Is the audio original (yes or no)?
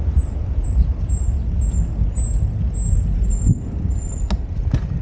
yes